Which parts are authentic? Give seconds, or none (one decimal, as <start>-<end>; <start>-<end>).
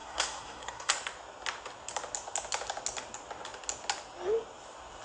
0.9-5.0